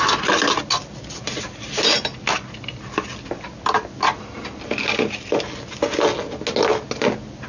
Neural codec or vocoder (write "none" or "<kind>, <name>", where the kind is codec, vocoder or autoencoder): none